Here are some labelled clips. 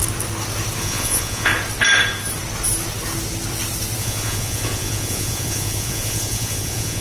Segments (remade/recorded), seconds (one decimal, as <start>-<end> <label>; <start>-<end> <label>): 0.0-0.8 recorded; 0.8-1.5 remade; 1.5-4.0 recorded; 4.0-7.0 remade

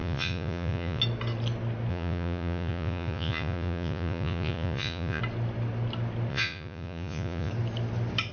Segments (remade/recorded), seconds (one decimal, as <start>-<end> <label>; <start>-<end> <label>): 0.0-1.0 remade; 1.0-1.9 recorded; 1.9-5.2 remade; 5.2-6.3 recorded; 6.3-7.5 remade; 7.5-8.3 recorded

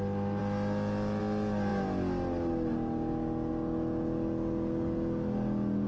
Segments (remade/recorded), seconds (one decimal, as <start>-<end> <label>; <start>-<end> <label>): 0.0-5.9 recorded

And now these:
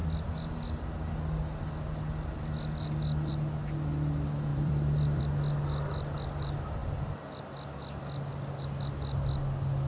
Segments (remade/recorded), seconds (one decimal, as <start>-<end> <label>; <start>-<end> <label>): 0.0-4.5 recorded; 4.5-5.2 remade; 5.2-9.9 recorded

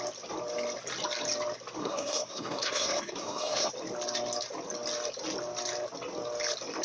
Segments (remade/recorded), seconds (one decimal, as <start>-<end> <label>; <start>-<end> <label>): 0.0-1.8 recorded; 1.8-3.7 remade; 3.7-6.8 recorded

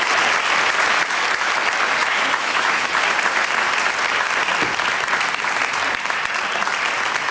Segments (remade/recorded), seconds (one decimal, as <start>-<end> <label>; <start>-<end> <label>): 0.0-2.0 recorded; 2.0-2.9 remade; 2.9-7.3 recorded